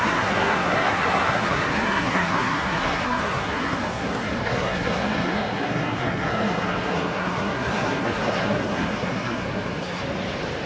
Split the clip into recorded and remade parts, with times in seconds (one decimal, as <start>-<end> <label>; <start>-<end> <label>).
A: 0.0-10.0 remade; 10.0-10.7 recorded